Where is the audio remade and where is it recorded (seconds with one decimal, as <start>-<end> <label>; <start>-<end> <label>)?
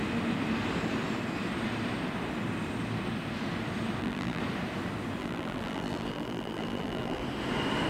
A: 0.0-4.0 recorded; 4.0-4.4 remade; 4.4-5.2 recorded; 5.2-7.2 remade; 7.2-7.9 recorded